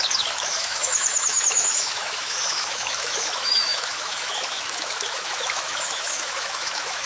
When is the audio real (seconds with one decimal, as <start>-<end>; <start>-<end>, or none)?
none